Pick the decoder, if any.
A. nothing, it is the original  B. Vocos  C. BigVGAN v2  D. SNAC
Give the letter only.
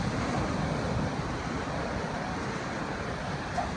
A